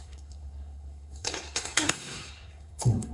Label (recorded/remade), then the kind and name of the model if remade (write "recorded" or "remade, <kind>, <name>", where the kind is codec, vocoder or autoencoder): remade, codec, SNAC